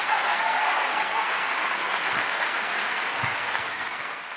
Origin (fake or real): fake